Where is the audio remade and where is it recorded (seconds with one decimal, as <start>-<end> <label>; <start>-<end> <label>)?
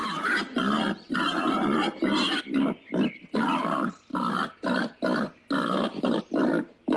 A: 0.0-7.0 recorded